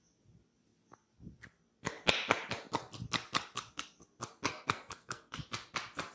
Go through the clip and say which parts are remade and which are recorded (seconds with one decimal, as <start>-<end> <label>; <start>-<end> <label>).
0.0-4.5 recorded; 4.5-5.4 remade; 5.4-6.1 recorded